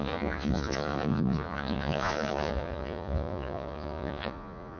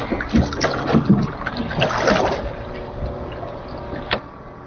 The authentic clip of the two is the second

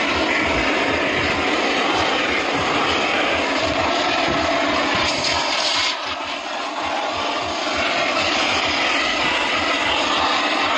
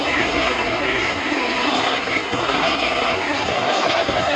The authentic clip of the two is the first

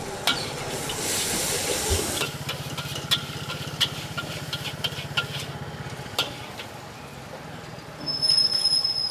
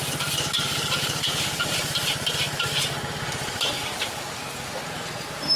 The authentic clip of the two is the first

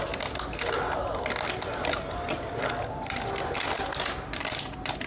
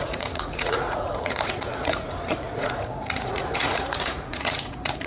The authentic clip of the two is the first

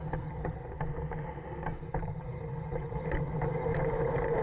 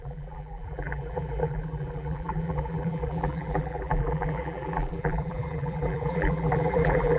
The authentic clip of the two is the first